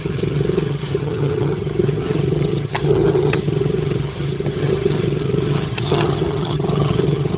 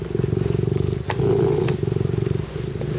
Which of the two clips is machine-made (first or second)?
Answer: first